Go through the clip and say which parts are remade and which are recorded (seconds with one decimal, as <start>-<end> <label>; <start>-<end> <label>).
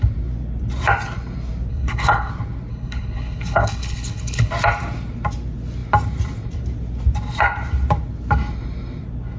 0.0-1.7 recorded; 1.7-2.3 remade; 2.3-2.7 recorded; 2.7-4.5 remade; 4.5-9.4 recorded